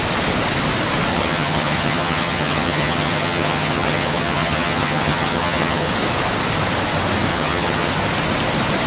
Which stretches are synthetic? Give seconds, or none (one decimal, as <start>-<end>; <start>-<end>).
1.1-5.9; 7.3-7.9